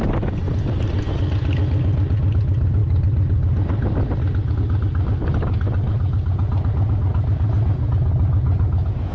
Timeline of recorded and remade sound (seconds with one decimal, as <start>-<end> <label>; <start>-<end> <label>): 0.0-9.1 recorded